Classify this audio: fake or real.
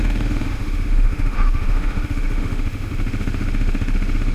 fake